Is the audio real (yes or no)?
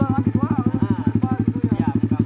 yes